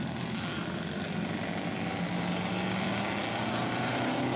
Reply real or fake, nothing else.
real